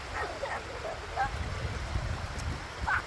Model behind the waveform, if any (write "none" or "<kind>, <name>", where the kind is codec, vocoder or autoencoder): vocoder, BigVGAN v2